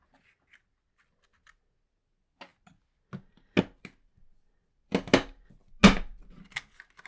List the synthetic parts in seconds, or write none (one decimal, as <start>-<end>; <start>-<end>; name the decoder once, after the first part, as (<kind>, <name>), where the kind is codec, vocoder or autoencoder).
none